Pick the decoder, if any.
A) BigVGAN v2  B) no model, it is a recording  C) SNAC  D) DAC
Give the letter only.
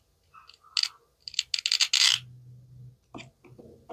B